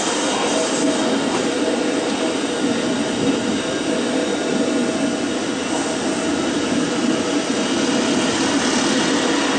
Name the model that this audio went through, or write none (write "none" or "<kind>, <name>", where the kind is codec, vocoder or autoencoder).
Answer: none